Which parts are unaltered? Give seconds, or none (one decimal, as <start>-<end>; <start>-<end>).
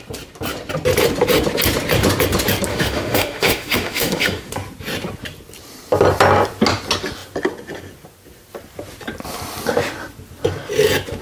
0.0-2.7; 4.5-11.2